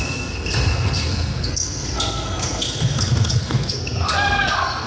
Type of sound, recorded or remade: remade